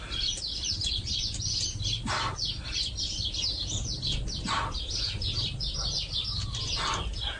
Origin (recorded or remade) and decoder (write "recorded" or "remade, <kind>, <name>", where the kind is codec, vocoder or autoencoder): recorded